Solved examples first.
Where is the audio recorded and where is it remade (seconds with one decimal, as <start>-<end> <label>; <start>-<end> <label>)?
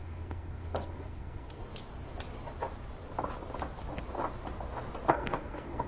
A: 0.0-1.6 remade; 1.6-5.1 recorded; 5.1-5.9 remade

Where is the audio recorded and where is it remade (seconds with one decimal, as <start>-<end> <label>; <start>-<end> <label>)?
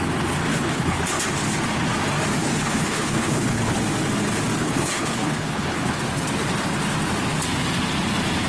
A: 0.0-0.5 recorded; 0.5-1.1 remade; 1.1-2.4 recorded; 2.4-3.8 remade; 3.8-4.6 recorded; 4.6-6.0 remade; 6.0-8.5 recorded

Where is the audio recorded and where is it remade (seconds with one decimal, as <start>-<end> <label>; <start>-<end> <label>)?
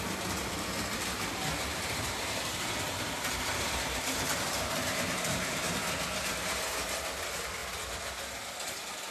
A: 0.0-1.7 recorded; 1.7-6.0 remade; 6.0-9.1 recorded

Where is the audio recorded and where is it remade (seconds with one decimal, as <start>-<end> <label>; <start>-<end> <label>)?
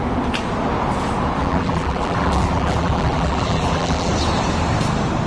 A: 0.0-1.4 recorded; 1.4-4.1 remade; 4.1-5.3 recorded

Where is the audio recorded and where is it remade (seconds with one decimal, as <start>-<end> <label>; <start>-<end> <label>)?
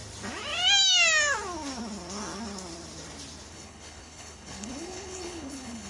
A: 0.0-3.5 recorded; 3.5-5.9 remade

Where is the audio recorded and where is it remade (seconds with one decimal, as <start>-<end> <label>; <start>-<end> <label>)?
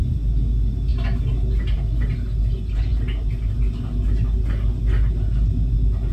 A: 0.0-6.1 recorded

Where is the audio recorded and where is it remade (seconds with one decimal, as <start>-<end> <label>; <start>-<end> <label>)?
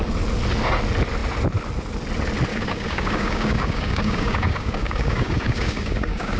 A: 0.0-2.5 recorded; 2.5-6.4 remade